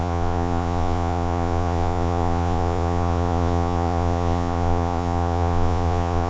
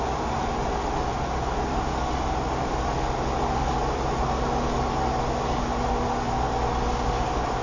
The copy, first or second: first